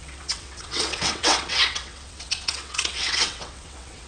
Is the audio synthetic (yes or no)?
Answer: yes